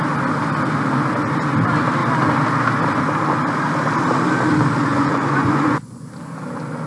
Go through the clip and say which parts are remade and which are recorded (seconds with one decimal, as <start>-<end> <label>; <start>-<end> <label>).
0.0-4.9 recorded; 4.9-6.1 remade; 6.1-6.9 recorded